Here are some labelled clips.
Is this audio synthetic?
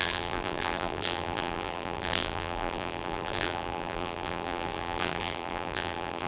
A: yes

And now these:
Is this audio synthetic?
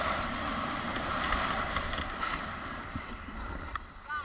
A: no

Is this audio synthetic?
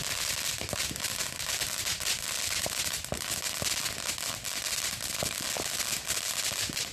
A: no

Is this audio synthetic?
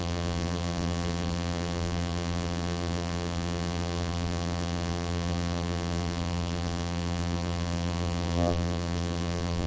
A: yes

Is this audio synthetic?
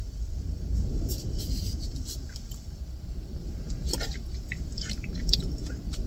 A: yes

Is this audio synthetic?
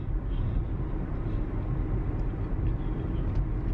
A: yes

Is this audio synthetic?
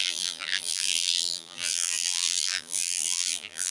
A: yes